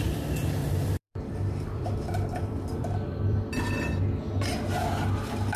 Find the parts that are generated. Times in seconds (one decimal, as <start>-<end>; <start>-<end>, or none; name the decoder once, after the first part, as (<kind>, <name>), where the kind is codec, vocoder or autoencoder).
0.6-4.0 (vocoder, BigVGAN v2)